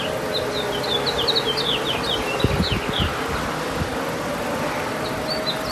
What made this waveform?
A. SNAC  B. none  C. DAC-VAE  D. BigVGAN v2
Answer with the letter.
B